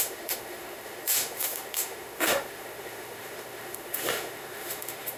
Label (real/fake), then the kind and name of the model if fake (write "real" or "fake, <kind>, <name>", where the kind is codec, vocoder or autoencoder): fake, autoencoder, DAC-VAE